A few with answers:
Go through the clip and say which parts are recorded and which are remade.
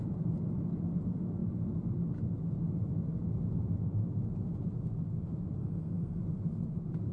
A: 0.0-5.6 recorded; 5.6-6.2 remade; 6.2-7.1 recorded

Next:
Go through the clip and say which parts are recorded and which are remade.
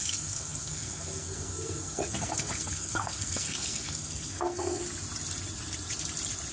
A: 0.0-4.8 remade; 4.8-6.5 recorded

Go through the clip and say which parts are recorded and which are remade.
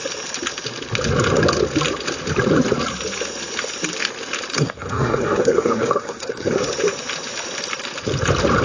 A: 0.0-4.5 recorded; 4.5-6.5 remade; 6.5-8.6 recorded